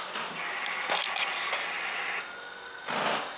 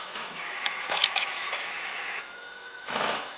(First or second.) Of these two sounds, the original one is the first